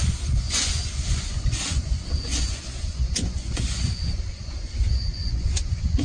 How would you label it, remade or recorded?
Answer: remade